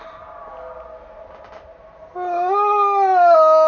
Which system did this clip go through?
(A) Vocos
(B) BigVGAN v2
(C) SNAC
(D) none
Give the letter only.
D